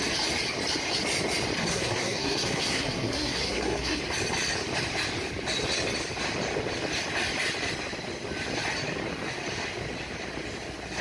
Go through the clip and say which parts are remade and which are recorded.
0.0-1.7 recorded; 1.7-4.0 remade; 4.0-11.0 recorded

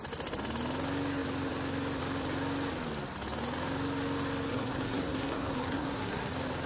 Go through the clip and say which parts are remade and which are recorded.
0.0-4.5 recorded; 4.5-6.3 remade; 6.3-6.7 recorded

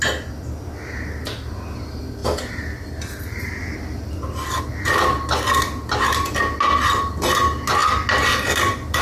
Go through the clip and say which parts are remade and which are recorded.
0.0-2.2 recorded; 2.2-4.6 remade; 4.6-9.0 recorded